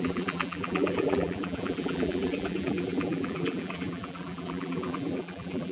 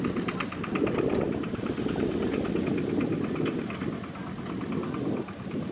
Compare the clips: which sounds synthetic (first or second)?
first